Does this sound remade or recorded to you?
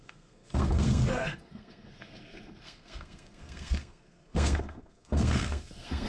remade